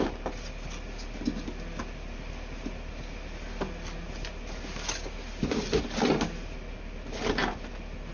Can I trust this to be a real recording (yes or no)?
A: yes